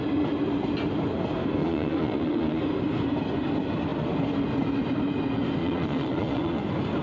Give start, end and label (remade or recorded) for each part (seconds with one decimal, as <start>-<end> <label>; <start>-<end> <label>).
0.0-1.6 recorded; 1.6-2.6 remade; 2.6-5.6 recorded; 5.6-6.6 remade; 6.6-7.0 recorded